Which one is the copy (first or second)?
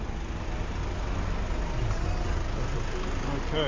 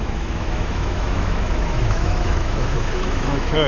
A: second